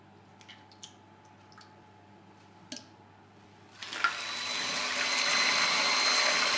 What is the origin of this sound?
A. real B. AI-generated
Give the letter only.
A